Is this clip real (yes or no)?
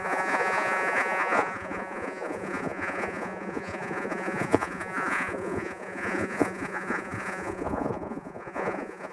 no